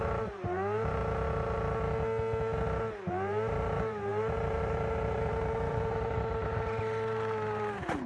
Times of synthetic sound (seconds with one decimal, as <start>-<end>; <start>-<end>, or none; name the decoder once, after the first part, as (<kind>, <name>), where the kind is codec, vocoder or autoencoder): 0.0-1.0 (vocoder, BigVGAN v2); 3.1-8.1